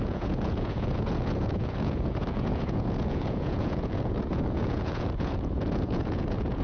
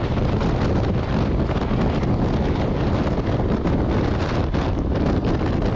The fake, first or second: first